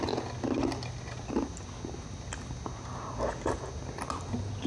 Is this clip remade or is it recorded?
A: recorded